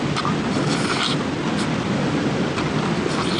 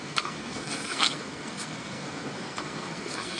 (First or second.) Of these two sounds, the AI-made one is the second